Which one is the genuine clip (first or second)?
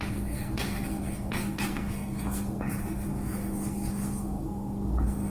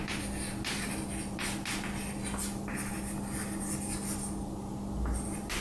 second